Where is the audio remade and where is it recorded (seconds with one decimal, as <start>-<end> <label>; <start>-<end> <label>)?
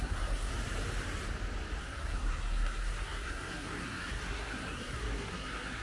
0.0-0.5 remade; 0.5-1.8 recorded; 1.8-5.8 remade